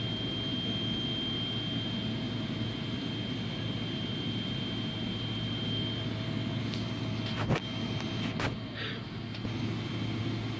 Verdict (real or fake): real